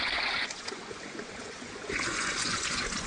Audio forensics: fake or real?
fake